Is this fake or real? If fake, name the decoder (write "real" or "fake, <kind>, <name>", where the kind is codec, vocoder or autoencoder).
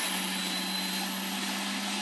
real